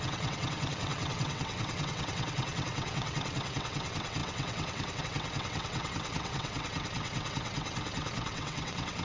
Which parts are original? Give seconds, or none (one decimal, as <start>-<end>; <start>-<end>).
none